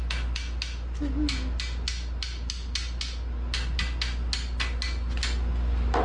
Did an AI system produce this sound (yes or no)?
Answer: no